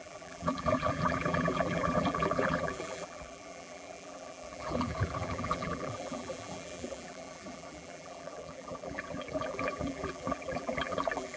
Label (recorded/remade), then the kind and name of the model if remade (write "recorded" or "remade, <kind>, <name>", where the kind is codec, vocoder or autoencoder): remade, vocoder, BigVGAN v2